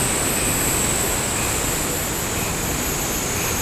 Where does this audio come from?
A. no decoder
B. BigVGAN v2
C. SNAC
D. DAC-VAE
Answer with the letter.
A